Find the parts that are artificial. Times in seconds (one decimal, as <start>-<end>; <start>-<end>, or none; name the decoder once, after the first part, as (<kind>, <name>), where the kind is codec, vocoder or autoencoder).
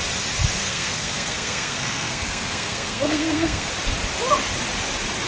0.6-3.7 (codec, SNAC)